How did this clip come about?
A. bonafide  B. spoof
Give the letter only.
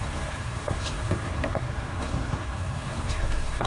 B